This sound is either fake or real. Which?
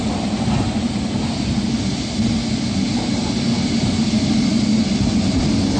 real